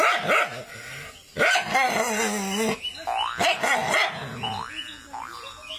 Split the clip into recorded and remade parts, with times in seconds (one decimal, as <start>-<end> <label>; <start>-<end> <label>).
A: 0.0-5.8 recorded